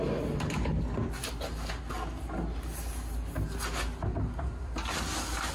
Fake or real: real